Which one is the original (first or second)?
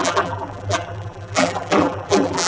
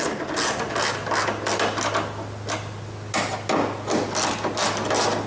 second